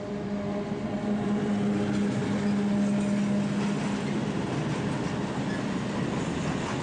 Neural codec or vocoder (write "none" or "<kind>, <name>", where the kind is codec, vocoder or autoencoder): none